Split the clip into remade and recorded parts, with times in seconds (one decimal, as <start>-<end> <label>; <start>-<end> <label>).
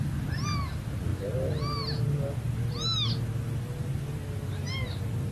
0.0-5.3 recorded